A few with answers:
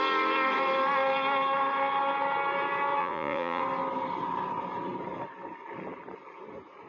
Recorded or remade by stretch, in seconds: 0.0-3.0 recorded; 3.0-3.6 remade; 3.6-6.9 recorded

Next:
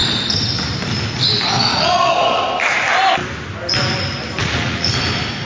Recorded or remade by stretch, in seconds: 0.0-1.7 recorded; 1.7-2.4 remade; 2.4-4.4 recorded; 4.4-4.9 remade; 4.9-5.5 recorded